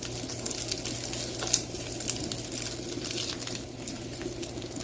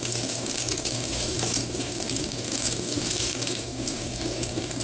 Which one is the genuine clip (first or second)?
first